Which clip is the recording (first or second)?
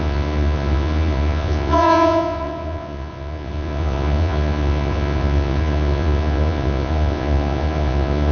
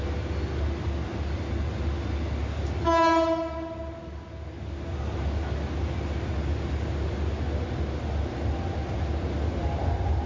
second